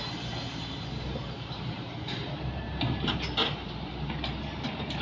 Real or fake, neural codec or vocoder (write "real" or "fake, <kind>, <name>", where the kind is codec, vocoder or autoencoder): fake, vocoder, BigVGAN v2